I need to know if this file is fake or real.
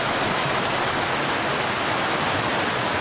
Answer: real